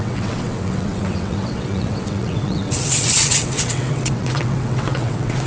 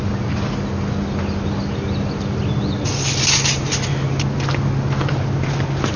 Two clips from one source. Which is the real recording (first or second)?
second